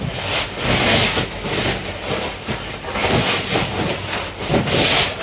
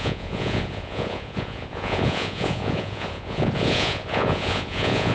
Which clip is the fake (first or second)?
second